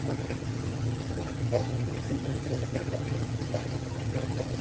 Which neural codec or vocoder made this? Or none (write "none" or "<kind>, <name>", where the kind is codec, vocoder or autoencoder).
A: vocoder, HiFi-GAN